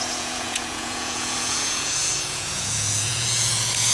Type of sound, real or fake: fake